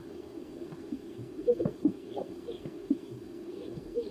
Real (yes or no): no